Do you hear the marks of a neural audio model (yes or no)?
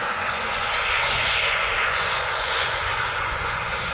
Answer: yes